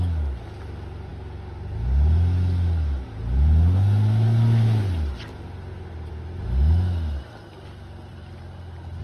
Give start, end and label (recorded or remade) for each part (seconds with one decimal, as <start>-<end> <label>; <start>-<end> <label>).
0.0-8.1 recorded; 8.1-9.0 remade